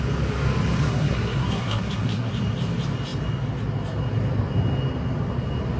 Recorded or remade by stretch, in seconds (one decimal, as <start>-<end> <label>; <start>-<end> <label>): 0.0-0.8 recorded; 0.8-2.3 remade; 2.3-5.8 recorded